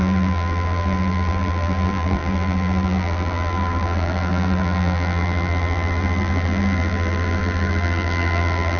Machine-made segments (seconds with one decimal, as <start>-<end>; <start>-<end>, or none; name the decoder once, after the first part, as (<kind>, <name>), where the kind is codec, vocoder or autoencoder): 0.0-8.8 (vocoder, BigVGAN v2)

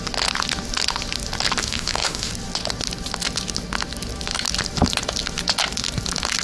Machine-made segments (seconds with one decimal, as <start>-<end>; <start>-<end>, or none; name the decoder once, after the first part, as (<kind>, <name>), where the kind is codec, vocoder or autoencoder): 1.6-2.3 (autoencoder, DAC-VAE)

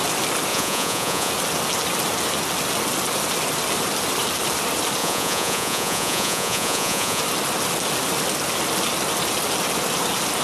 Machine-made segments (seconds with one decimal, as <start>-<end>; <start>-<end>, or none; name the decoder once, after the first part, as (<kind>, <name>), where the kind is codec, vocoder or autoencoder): 0.5-1.3 (vocoder, Vocos); 5.0-7.2